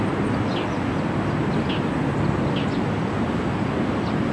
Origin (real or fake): real